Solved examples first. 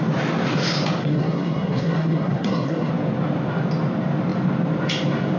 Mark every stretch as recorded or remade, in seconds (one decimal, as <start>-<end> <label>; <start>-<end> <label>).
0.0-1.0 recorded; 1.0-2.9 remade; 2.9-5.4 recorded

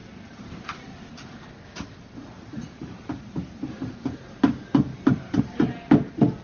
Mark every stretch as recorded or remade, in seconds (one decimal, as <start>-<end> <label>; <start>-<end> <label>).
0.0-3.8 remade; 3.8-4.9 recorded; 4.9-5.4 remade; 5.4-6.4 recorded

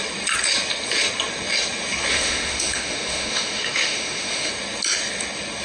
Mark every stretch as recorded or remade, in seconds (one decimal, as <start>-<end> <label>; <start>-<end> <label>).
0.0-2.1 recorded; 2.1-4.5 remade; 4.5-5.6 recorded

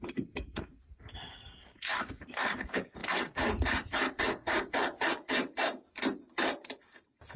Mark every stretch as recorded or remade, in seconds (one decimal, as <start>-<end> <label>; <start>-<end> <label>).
0.0-7.4 remade